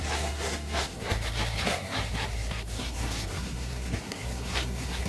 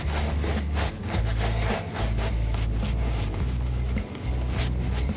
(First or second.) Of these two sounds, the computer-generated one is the first